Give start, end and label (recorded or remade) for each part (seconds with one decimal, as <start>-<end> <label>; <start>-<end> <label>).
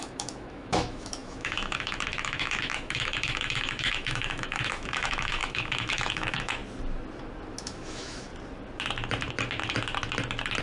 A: 0.0-6.6 remade; 6.6-7.6 recorded; 7.6-8.3 remade; 8.3-10.6 recorded